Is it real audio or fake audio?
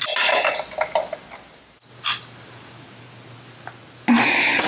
real